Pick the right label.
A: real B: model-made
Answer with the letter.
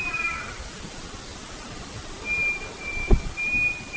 A